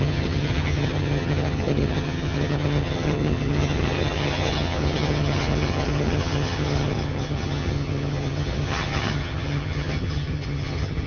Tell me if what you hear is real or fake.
fake